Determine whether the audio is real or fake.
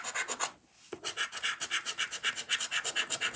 real